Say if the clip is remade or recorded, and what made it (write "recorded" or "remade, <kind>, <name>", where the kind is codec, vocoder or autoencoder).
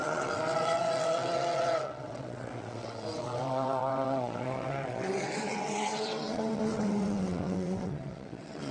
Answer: remade, vocoder, WaveNeXt